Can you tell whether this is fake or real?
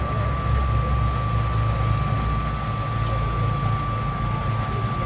real